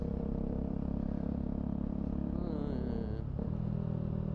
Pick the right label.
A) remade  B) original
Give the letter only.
B